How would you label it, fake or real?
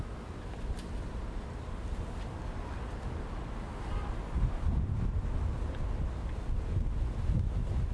real